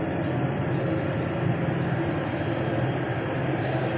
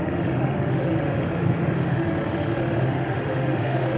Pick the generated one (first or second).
second